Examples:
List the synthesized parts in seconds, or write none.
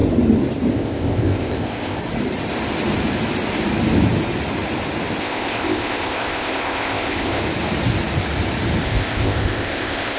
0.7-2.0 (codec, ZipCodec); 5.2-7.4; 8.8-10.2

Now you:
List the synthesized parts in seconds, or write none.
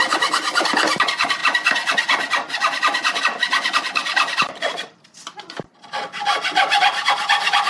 none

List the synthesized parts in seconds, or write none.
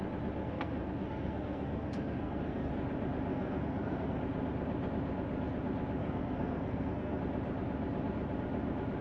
0.4-2.7 (codec, SNAC); 3.3-4.2; 6.0-7.2